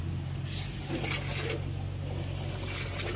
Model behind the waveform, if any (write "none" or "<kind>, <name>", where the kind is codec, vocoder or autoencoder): none